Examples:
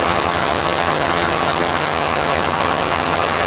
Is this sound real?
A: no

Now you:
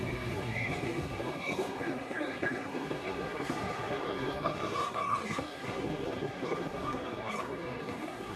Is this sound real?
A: no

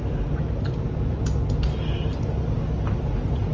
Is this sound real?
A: yes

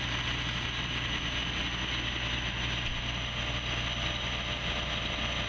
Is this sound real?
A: yes